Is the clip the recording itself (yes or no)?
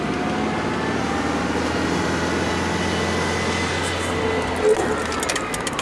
yes